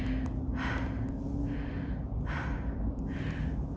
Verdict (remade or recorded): recorded